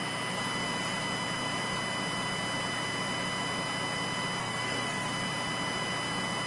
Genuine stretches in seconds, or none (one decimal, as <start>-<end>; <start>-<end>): 0.0-4.4; 5.1-6.5